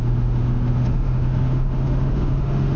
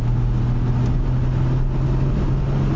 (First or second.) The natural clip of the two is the second